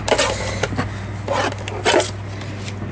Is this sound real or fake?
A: real